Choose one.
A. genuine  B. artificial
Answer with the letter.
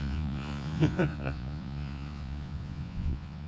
B